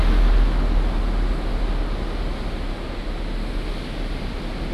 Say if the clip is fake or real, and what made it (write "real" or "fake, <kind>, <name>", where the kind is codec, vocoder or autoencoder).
real